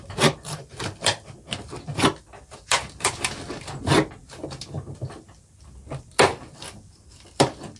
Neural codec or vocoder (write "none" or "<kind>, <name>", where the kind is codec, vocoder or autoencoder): none